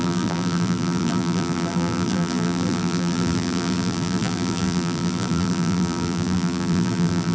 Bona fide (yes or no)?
no